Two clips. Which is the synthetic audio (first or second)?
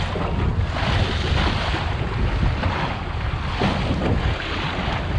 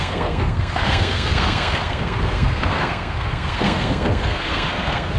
second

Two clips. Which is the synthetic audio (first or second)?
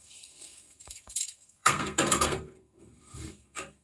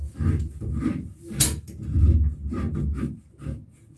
first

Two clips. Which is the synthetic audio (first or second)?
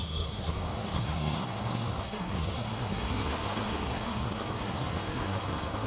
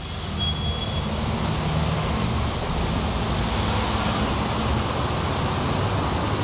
first